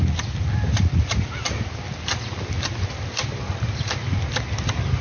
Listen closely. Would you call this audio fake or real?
real